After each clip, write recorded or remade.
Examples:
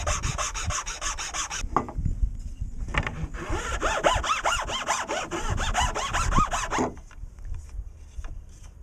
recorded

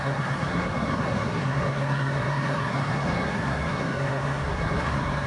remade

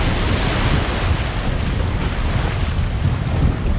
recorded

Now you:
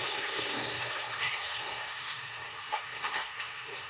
remade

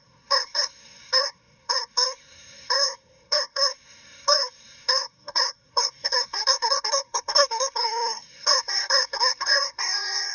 remade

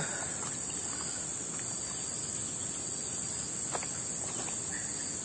recorded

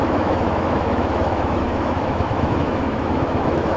remade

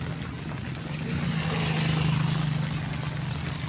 recorded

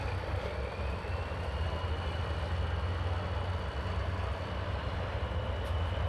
recorded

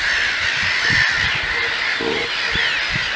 recorded